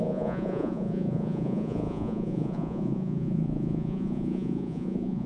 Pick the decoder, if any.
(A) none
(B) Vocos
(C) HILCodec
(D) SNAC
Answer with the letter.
B